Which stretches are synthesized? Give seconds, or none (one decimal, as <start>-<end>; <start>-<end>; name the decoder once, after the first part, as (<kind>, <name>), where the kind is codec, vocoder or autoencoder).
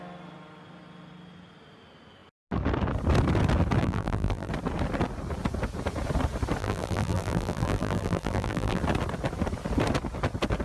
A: 3.8-4.5 (vocoder, BigVGAN v2); 6.6-8.8